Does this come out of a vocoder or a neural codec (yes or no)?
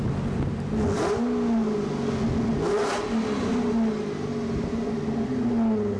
no